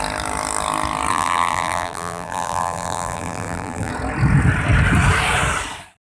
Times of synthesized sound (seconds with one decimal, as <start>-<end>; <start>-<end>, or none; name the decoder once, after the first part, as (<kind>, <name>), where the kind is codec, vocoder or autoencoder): 1.1-3.9 (vocoder, BigVGAN v2)